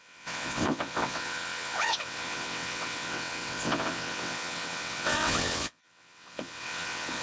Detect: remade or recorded remade